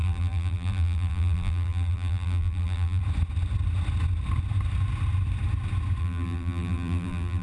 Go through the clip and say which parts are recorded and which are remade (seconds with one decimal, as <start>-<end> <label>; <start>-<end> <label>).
0.0-3.0 remade; 3.0-6.0 recorded; 6.0-7.4 remade